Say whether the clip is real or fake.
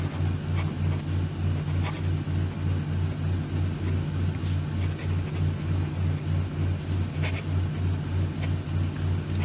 real